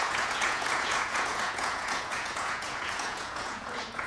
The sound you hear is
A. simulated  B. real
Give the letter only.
A